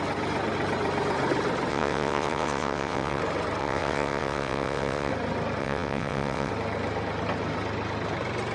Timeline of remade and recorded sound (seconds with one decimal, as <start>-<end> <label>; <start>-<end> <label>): 0.0-1.7 recorded; 1.7-3.2 remade; 3.2-3.6 recorded; 3.6-5.1 remade; 5.1-5.6 recorded; 5.6-6.5 remade; 6.5-8.5 recorded